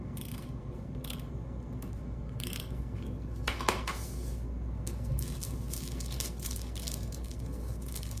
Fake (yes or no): yes